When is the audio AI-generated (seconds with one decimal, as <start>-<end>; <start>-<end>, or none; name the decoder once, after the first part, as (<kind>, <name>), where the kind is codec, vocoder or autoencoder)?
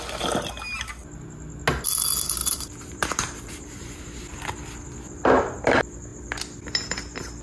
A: 2.4-4.0 (vocoder, BigVGAN v2)